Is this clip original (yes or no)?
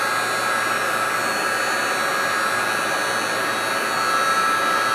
yes